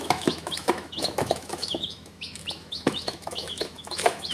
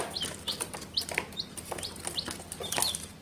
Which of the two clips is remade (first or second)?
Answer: first